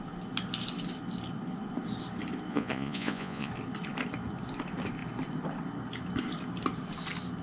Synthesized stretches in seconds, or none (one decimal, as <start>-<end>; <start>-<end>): 2.5-3.5